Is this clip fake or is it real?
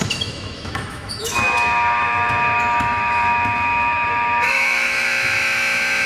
fake